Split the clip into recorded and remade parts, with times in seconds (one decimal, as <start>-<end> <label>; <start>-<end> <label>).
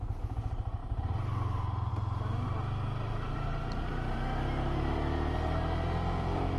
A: 0.0-6.6 recorded